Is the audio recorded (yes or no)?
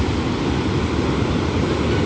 yes